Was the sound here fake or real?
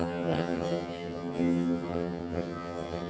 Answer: fake